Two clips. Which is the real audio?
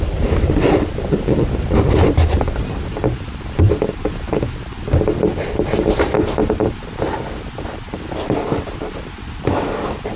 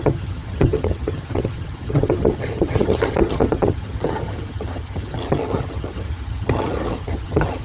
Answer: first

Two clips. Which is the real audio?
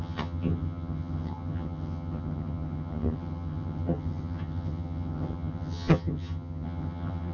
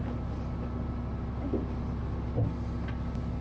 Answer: second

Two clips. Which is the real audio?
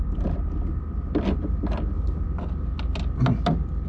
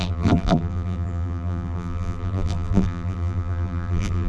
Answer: first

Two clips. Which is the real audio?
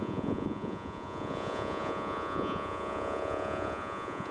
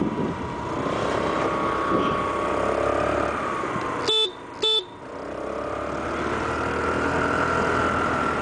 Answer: second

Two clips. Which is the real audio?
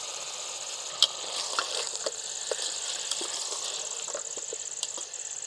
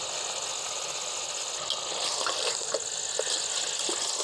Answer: second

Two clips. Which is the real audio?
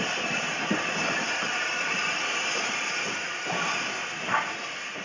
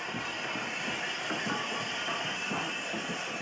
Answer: second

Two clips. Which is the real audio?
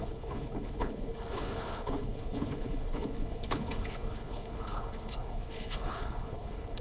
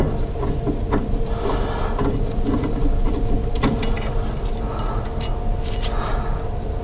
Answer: second